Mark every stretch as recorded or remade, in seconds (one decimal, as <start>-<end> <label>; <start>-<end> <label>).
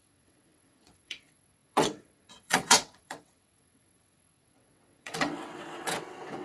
0.0-6.4 remade